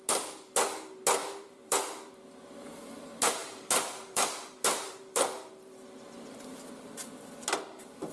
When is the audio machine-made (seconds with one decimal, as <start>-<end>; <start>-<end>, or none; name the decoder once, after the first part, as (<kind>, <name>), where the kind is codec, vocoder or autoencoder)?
1.2-2.1 (vocoder, BigVGAN v2); 3.4-5.8